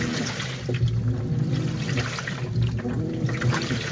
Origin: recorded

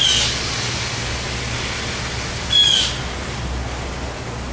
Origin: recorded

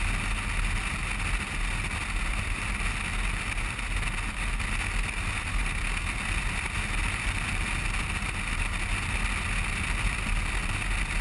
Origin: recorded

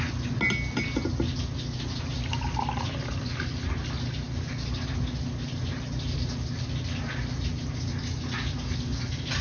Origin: recorded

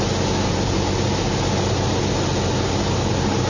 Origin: recorded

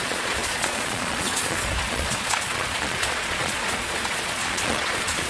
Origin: remade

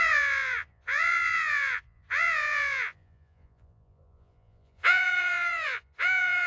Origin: remade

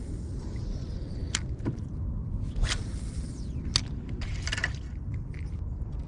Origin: recorded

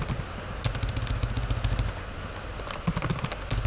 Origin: recorded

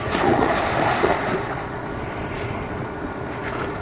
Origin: remade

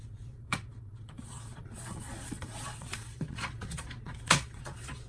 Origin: remade